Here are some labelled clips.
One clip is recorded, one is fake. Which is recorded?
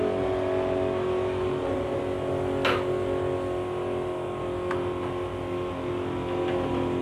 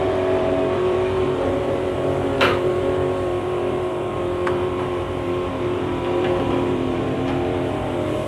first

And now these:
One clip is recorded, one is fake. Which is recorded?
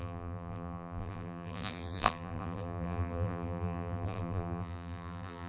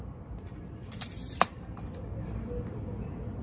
second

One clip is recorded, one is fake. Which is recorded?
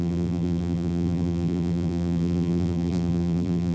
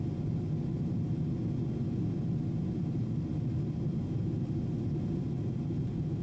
second